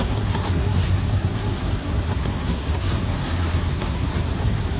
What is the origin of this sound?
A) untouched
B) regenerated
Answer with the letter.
B